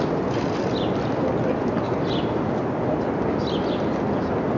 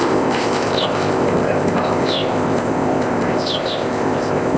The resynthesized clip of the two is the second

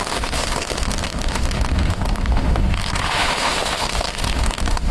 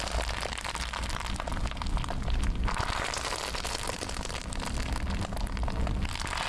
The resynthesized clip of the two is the first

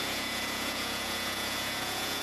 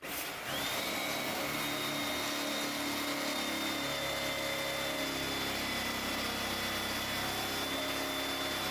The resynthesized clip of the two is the first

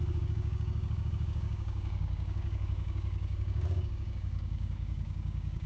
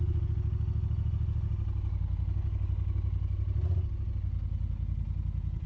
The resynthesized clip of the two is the first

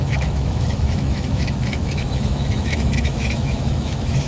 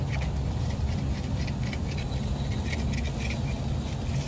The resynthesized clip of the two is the first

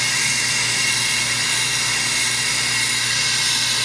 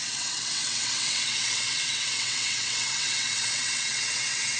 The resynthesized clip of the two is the second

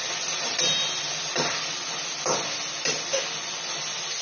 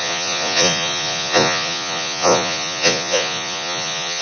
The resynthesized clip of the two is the second